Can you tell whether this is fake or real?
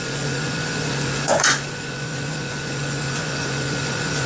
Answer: fake